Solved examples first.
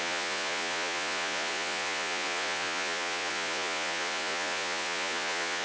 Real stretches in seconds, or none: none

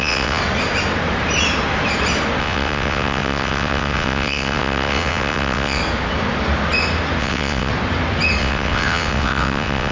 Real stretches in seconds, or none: 0.4-2.4; 5.8-7.2; 7.7-8.4

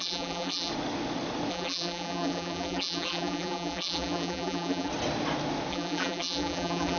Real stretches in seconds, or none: 0.7-1.5; 4.9-5.7

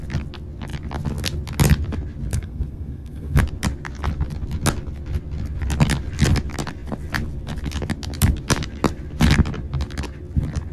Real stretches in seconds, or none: 0.0-2.3; 3.4-10.7

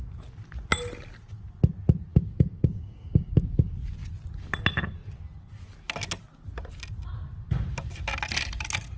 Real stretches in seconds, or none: 0.0-2.1; 3.3-9.0

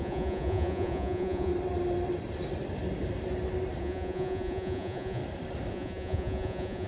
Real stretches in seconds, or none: 1.5-3.8; 5.2-5.7

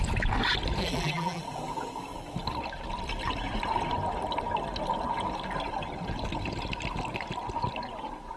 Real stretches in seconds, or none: 0.0-0.8; 1.4-8.4